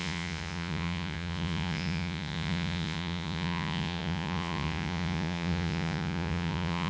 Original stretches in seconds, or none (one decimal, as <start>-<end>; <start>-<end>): none